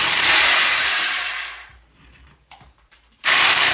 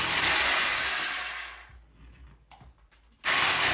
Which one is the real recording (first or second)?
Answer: second